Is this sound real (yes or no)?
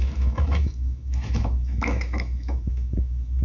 no